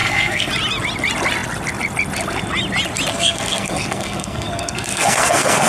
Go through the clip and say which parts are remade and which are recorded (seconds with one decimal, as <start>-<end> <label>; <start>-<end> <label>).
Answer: 0.0-0.5 remade; 0.5-3.1 recorded; 3.1-5.7 remade